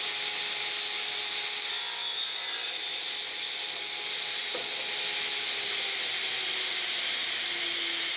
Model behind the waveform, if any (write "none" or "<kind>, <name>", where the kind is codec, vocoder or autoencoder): none